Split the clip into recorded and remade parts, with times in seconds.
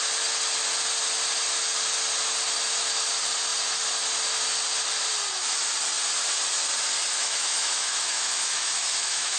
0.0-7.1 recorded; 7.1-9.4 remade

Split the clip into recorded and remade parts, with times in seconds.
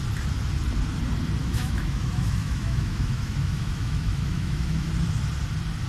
0.0-1.4 recorded; 1.4-4.9 remade; 4.9-5.9 recorded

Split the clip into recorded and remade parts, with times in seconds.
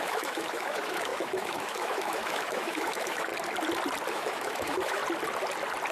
0.0-3.3 remade; 3.3-4.1 recorded; 4.1-5.0 remade; 5.0-5.9 recorded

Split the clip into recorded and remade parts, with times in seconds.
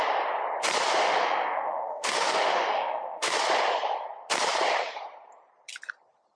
0.0-1.0 recorded; 1.0-3.4 remade; 3.4-6.4 recorded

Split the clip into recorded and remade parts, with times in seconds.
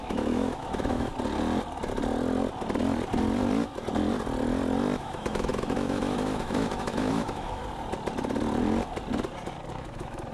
0.0-1.1 remade; 1.1-5.0 recorded; 5.0-7.6 remade; 7.6-9.7 recorded; 9.7-10.3 remade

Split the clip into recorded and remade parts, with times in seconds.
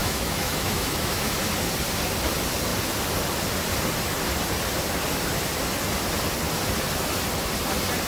0.0-1.3 remade; 1.3-8.1 recorded